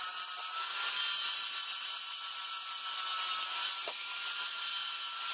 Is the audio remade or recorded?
recorded